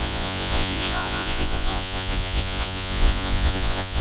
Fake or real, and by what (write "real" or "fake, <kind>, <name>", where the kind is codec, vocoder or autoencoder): fake, vocoder, Vocos